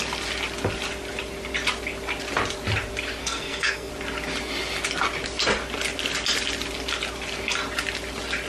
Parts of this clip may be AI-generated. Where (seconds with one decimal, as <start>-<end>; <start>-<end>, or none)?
3.2-3.9